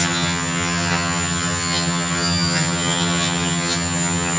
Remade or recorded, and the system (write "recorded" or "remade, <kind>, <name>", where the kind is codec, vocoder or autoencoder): remade, vocoder, HiFi-GAN